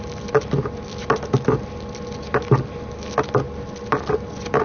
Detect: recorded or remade recorded